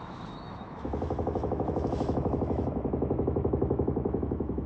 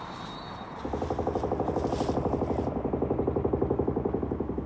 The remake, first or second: first